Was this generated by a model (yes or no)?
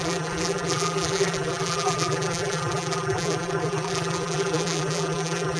yes